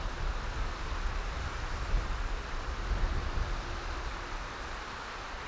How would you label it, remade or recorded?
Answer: recorded